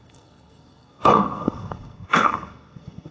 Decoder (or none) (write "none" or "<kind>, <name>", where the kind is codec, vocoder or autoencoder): codec, SNAC